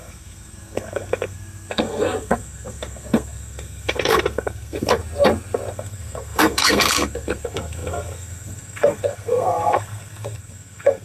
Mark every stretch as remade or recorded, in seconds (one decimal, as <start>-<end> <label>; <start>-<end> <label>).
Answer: 0.0-5.0 remade; 5.0-5.7 recorded; 5.7-11.0 remade